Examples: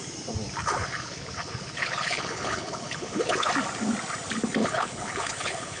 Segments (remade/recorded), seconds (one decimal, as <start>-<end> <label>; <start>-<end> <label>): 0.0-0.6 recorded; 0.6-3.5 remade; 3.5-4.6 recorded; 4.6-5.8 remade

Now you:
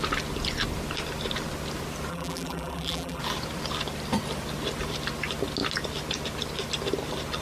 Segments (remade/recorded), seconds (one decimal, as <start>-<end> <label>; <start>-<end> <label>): 0.0-2.1 recorded; 2.1-3.2 remade; 3.2-7.4 recorded

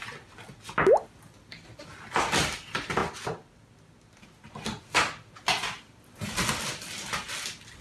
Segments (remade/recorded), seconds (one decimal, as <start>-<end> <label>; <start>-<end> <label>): 0.0-7.8 recorded